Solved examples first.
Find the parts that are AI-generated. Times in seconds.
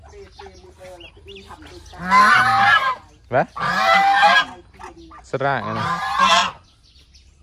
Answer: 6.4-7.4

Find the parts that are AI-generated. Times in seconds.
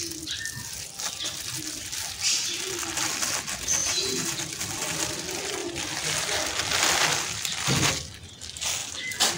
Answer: 3.8-4.4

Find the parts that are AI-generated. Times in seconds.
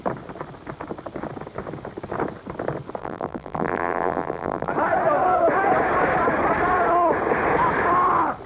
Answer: 3.0-4.7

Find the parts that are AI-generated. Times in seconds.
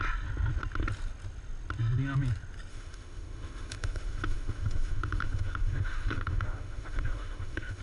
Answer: 2.7-7.8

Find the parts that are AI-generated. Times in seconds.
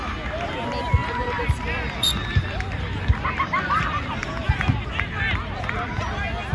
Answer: 1.0-4.5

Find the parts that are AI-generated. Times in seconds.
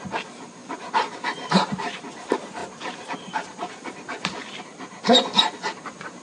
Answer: 0.0-6.2